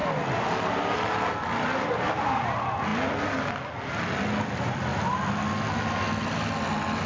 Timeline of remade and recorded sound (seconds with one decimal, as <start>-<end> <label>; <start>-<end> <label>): 0.0-0.7 recorded; 0.7-2.9 remade; 2.9-4.4 recorded; 4.4-4.9 remade; 4.9-7.1 recorded